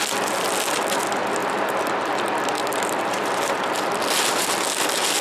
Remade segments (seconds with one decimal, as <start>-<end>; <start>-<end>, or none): 1.4-4.5